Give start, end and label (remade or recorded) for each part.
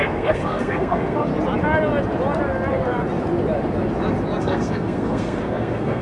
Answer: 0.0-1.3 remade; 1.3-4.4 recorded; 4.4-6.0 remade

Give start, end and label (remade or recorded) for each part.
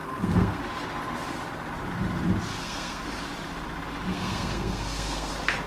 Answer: 0.0-0.6 remade; 0.6-2.5 recorded; 2.5-3.0 remade; 3.0-4.1 recorded; 4.1-5.3 remade; 5.3-5.7 recorded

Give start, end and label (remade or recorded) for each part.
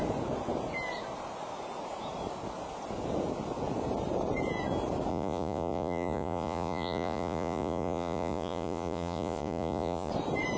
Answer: 0.0-5.1 recorded; 5.1-10.1 remade; 10.1-10.6 recorded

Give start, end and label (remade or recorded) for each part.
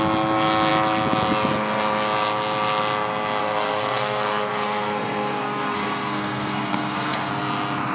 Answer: 0.0-3.4 recorded; 3.4-7.3 remade; 7.3-7.9 recorded